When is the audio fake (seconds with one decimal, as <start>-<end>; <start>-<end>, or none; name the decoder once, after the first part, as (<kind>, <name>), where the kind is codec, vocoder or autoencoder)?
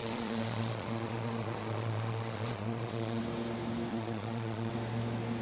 0.0-3.2 (vocoder, Vocos); 3.9-4.7